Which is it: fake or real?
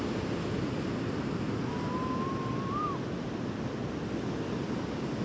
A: real